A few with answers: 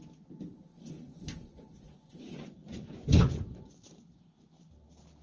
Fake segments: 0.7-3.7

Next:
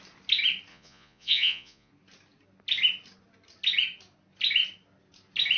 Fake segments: 0.7-1.9